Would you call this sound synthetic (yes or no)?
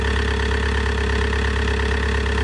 no